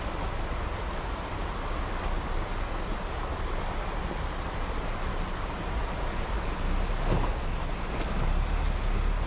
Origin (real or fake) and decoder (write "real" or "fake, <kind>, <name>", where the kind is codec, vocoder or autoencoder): real